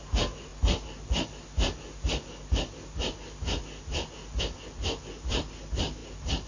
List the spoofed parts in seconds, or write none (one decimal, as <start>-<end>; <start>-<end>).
none